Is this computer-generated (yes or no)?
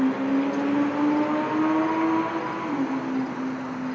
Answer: no